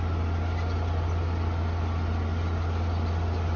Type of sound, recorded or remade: recorded